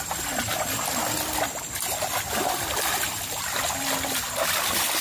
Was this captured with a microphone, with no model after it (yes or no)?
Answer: yes